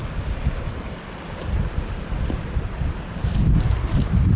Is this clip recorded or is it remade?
recorded